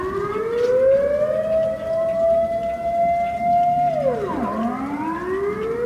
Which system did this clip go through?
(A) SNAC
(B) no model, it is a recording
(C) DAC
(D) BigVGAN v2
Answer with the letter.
B